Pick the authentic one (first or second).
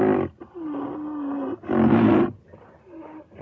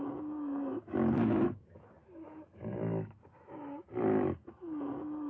first